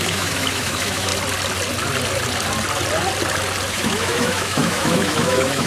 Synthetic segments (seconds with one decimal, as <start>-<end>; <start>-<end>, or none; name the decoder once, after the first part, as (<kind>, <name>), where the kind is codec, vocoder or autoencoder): 0.0-1.1 (autoencoder, DAC-VAE); 3.7-5.7